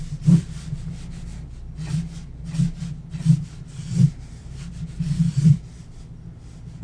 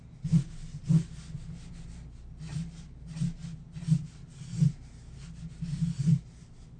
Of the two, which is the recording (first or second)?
second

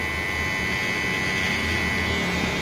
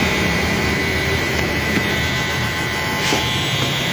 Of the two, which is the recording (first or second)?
first